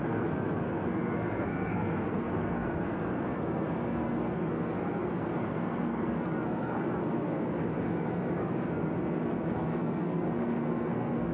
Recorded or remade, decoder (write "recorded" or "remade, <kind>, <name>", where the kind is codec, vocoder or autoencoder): remade, codec, SNAC